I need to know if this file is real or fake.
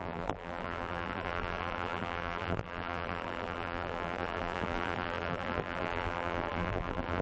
fake